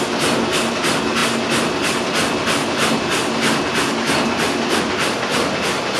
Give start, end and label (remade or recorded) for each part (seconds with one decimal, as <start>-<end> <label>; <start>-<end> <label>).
0.0-6.0 recorded